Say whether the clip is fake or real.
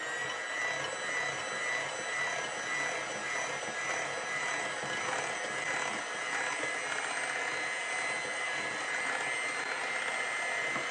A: real